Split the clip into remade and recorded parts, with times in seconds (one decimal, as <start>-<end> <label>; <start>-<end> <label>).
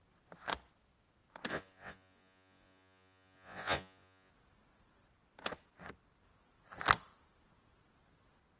0.0-1.5 recorded; 1.5-4.3 remade; 4.3-8.6 recorded